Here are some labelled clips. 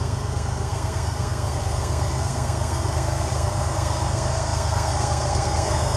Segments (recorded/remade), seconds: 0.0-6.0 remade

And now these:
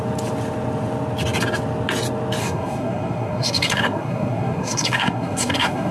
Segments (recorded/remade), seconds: 0.0-2.4 recorded; 2.4-5.9 remade

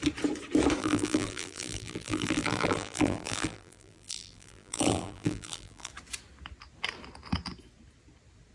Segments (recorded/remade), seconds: 0.0-0.8 recorded; 0.8-5.9 remade; 5.9-8.5 recorded

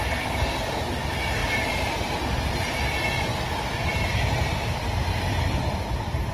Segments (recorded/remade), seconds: 0.0-1.4 recorded; 1.4-2.2 remade; 2.2-6.3 recorded

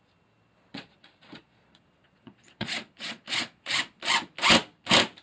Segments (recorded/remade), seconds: 0.0-0.7 recorded; 0.7-3.8 remade; 3.8-5.2 recorded

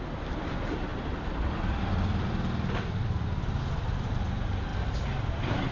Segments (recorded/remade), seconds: 0.0-5.7 recorded

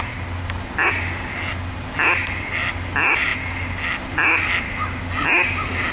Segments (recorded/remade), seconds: 0.0-5.9 recorded